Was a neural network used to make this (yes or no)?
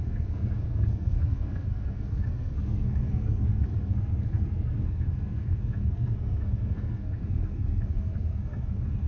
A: yes